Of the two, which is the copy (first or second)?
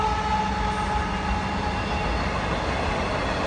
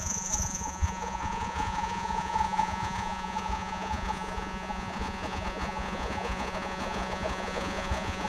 second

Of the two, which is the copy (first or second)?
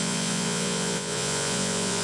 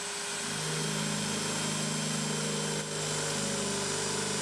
first